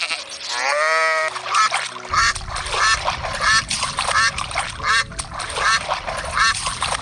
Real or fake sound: real